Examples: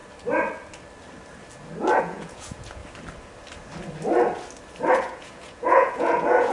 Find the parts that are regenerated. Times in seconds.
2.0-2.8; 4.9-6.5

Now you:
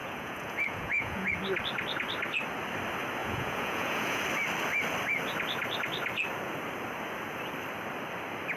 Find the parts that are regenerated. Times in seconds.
0.0-1.3; 3.2-4.2

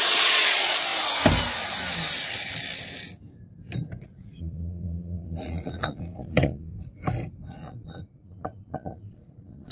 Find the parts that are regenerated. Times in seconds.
0.0-0.9; 4.0-6.7; 7.5-9.7